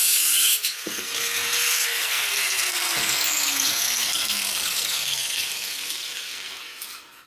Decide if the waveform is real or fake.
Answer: fake